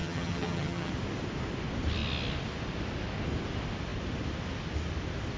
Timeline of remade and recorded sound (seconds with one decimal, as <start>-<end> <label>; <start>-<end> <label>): 0.0-0.9 remade; 0.9-5.4 recorded